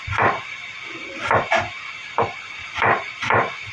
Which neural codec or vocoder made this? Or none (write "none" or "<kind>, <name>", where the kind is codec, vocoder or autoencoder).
vocoder, BigVGAN v2